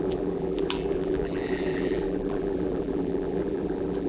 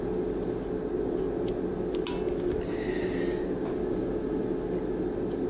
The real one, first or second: second